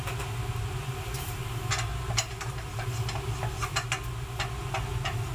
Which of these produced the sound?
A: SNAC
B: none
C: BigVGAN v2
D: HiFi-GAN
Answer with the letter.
B